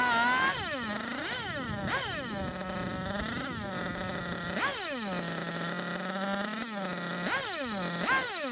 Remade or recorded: recorded